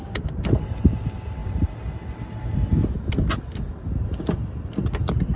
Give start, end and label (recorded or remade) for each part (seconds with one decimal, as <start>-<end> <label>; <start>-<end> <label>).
0.0-5.4 recorded